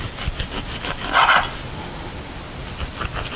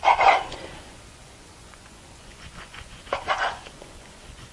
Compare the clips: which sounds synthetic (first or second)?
second